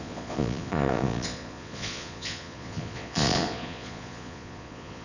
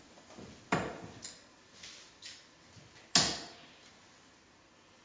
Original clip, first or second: second